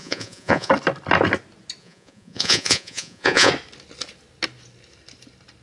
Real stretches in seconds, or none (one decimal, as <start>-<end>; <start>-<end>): 0.7-1.8; 3.5-5.6